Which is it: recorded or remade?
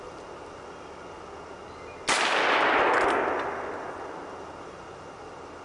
recorded